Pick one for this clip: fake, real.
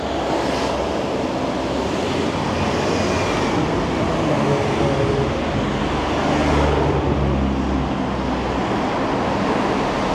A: real